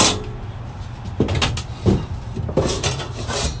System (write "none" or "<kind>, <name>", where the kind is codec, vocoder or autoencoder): none